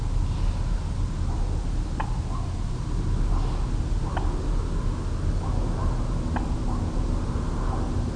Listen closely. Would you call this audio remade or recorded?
recorded